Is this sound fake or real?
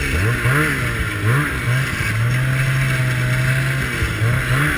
real